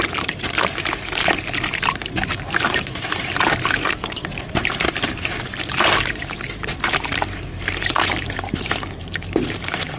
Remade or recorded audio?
remade